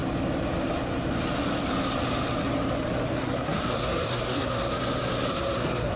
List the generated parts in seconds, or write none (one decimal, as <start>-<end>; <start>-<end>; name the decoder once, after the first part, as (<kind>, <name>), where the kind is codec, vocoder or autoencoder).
3.2-4.7 (codec, SNAC); 5.3-6.0